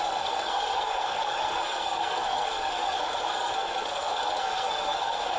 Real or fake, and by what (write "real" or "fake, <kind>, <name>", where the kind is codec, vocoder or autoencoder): fake, codec, SNAC